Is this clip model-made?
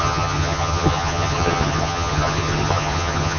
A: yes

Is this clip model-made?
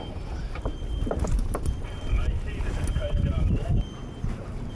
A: yes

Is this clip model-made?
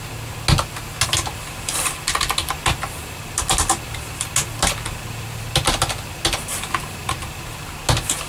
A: no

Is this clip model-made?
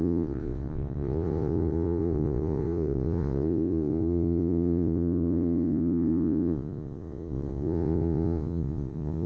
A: yes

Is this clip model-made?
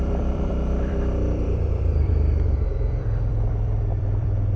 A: yes